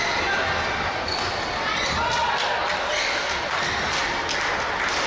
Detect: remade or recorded recorded